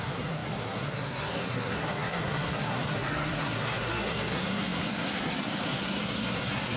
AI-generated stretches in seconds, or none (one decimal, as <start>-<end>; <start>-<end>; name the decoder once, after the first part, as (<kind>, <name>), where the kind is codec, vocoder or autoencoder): 0.0-6.8 (codec, SNAC)